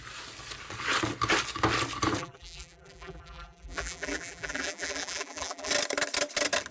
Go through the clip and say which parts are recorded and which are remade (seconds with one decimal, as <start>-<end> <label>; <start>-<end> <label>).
0.0-2.2 recorded; 2.2-5.7 remade; 5.7-6.7 recorded